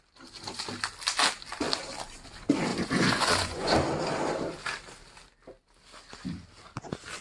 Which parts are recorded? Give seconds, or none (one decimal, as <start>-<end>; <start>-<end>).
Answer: 0.0-2.7; 3.7-7.2